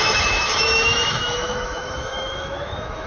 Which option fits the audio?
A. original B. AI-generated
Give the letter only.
B